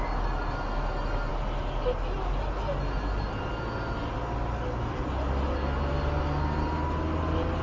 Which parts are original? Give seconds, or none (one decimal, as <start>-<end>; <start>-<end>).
0.0-7.6